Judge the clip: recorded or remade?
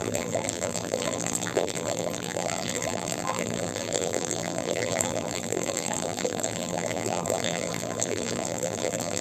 remade